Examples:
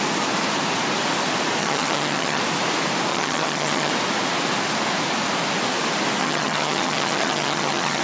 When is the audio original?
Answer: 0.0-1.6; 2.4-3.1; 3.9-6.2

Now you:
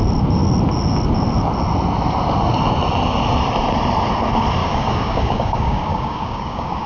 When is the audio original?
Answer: 0.0-4.6

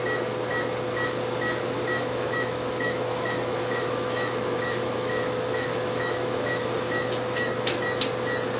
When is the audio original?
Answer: 0.0-2.0; 6.6-8.6

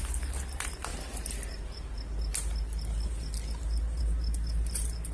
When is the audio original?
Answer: 0.0-5.1

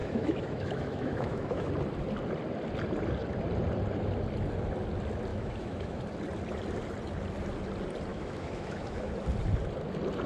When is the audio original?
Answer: 1.7-5.3; 6.0-8.1; 9.1-10.3

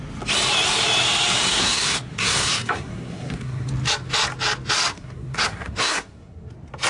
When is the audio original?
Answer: 0.0-1.5; 3.7-4.9; 6.5-6.9

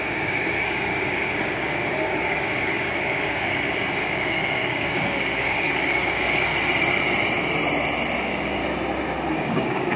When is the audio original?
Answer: 6.5-8.2; 8.6-9.3